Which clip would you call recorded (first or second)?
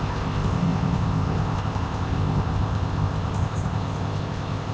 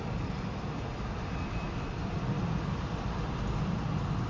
second